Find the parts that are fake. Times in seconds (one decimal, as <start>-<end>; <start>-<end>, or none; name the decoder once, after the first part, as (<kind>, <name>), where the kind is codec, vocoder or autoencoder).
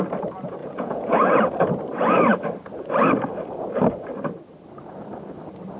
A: 0.6-1.3 (vocoder, Vocos)